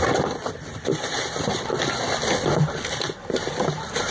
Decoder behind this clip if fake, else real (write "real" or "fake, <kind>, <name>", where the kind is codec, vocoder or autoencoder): fake, vocoder, BigVGAN v2